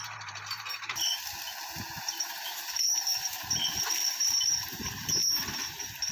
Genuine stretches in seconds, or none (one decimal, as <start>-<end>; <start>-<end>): 1.1-2.0; 5.2-6.1